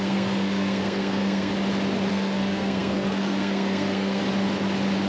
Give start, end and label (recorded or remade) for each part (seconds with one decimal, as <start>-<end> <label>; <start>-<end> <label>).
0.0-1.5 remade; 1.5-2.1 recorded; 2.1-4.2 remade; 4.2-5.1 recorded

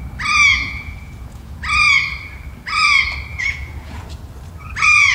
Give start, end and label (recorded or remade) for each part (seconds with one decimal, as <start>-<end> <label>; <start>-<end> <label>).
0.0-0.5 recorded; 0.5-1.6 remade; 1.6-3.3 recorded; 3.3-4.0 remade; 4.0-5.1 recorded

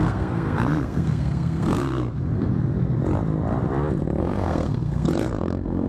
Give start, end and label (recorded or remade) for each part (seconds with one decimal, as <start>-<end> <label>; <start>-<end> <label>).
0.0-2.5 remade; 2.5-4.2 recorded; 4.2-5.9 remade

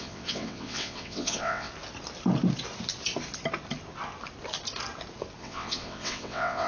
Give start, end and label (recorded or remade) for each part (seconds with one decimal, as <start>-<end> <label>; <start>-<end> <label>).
0.0-1.7 remade; 1.7-5.4 recorded; 5.4-6.7 remade

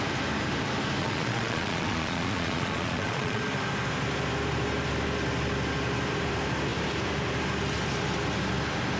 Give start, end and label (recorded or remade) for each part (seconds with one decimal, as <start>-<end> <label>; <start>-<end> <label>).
0.0-1.0 recorded; 1.0-3.4 remade; 3.4-9.0 recorded

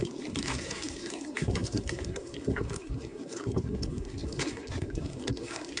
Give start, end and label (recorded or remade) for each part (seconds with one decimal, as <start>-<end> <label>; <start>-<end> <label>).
0.0-5.8 remade